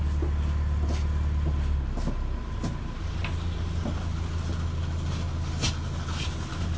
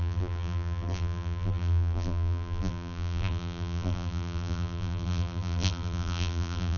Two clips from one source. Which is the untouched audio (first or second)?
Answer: first